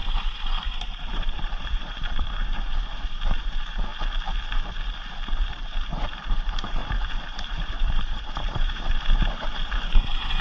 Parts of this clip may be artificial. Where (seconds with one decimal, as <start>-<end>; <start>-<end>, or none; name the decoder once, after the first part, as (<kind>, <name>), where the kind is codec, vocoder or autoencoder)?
0.0-3.9 (vocoder, BigVGAN v2); 5.5-10.4